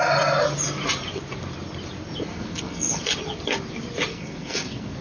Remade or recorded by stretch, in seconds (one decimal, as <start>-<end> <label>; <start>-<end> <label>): 0.0-2.3 recorded; 2.3-3.0 remade; 3.0-4.1 recorded; 4.1-5.0 remade